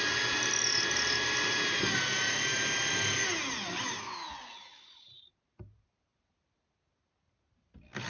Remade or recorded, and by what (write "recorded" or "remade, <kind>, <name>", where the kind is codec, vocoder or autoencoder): recorded